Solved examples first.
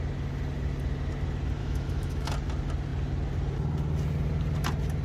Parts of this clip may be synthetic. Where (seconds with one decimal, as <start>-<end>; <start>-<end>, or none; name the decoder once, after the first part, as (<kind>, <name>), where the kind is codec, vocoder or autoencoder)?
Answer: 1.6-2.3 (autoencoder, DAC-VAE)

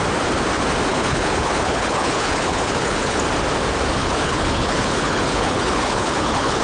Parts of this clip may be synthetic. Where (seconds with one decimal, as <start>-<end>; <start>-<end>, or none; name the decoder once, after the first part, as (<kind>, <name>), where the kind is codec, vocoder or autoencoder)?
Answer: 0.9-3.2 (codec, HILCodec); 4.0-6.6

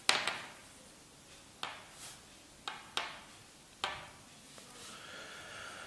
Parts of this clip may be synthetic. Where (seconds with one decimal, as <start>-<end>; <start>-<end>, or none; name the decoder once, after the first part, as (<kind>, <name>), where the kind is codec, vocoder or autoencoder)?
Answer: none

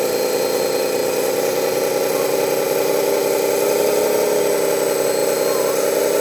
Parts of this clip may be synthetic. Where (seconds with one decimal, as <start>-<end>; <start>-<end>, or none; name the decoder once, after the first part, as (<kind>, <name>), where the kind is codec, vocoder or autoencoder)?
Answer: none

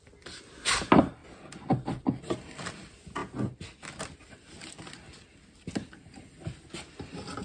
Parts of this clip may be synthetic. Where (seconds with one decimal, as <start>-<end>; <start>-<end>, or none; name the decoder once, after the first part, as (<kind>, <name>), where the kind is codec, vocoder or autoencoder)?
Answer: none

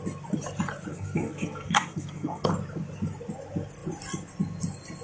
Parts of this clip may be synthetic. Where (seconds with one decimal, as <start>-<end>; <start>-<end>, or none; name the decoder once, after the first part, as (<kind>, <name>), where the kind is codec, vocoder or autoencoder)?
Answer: 0.9-2.5 (codec, SNAC)

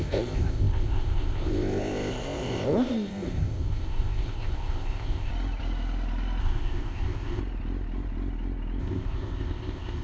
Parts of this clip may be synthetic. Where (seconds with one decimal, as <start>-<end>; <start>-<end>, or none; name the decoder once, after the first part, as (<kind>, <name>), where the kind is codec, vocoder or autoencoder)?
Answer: 0.0-5.3 (codec, ZipCodec); 6.4-7.4; 8.8-10.0

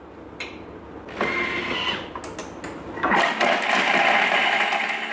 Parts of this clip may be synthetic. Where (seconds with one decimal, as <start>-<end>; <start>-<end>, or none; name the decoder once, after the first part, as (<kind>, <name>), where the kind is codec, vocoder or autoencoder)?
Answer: none